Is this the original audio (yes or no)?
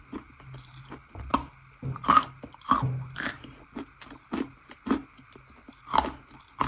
yes